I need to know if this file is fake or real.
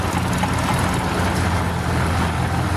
real